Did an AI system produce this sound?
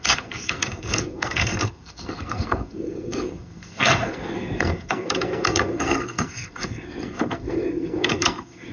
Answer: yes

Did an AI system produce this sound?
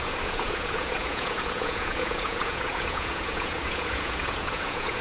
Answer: yes